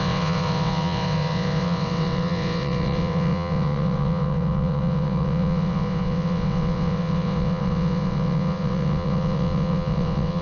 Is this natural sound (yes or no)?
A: no